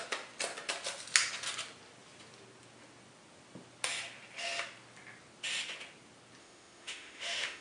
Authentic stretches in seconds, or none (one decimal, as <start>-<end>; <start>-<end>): 0.0-6.4